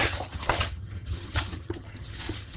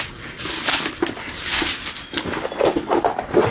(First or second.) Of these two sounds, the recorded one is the second